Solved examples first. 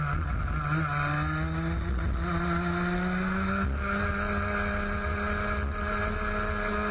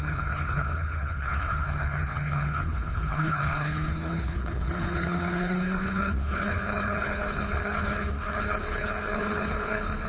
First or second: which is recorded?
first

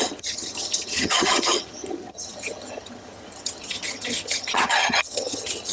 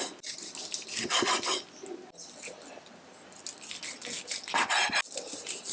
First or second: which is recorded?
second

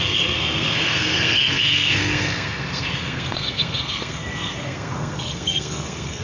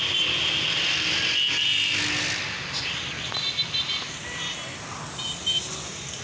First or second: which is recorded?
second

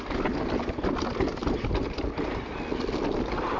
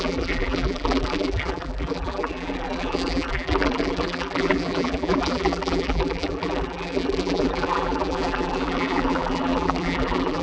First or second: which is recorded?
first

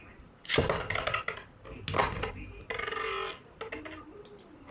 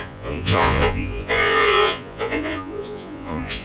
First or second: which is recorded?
first